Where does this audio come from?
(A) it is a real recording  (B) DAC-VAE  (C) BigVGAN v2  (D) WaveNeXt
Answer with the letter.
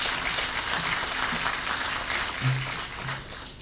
A